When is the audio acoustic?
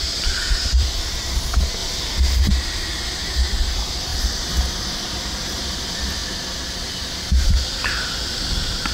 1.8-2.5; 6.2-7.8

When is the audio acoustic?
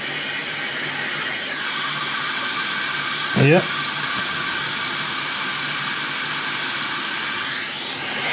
0.0-8.3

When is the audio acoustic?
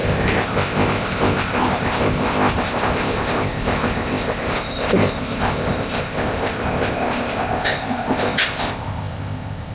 none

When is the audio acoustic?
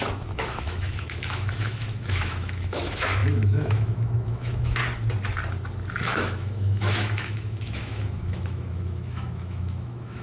4.8-6.0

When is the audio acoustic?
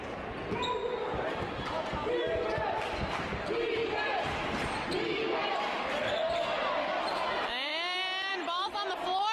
0.0-3.8; 5.5-6.2; 6.8-9.3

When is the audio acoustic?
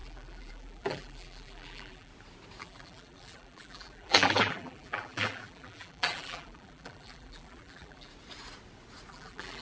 2.1-2.6; 8.1-9.1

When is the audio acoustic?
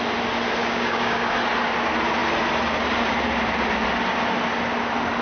0.0-0.6; 1.3-5.2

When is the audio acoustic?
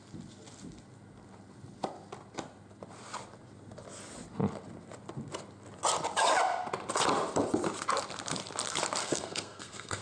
0.0-9.0